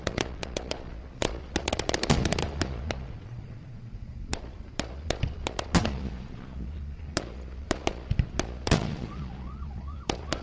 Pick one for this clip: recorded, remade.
remade